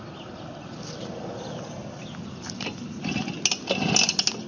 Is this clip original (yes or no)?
yes